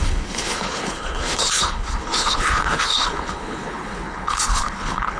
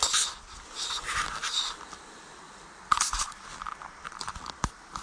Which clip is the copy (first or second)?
first